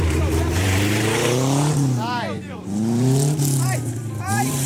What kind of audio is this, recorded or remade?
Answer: remade